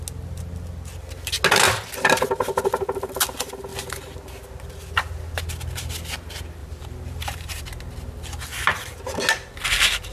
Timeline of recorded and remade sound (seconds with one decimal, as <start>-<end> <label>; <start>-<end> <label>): 0.0-6.6 recorded; 6.6-7.6 remade; 7.6-10.1 recorded